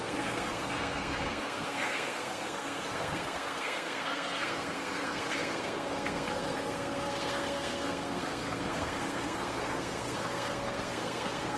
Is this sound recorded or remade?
remade